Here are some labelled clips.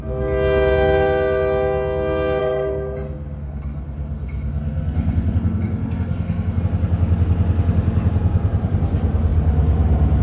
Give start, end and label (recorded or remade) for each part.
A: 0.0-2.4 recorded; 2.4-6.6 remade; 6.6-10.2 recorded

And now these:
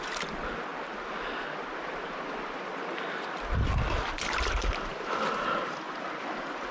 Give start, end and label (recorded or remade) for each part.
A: 0.0-6.7 recorded

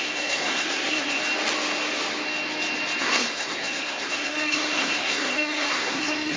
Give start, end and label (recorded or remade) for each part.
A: 0.0-1.2 remade; 1.2-3.0 recorded; 3.0-6.4 remade

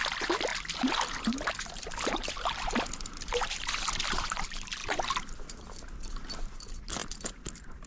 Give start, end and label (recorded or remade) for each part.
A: 0.0-7.9 recorded

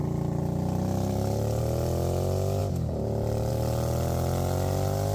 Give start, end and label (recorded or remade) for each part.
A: 0.0-5.1 recorded

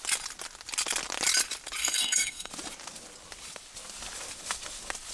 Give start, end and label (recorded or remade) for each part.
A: 0.0-1.8 recorded; 1.8-2.5 remade; 2.5-5.1 recorded

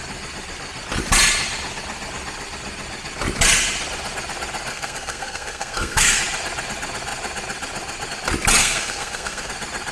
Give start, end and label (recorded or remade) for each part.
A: 0.0-4.7 recorded; 4.7-6.2 remade; 6.2-8.6 recorded; 8.6-9.5 remade; 9.5-9.9 recorded

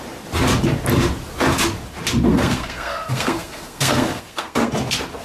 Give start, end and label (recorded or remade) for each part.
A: 0.0-2.3 recorded; 2.3-4.7 remade; 4.7-5.2 recorded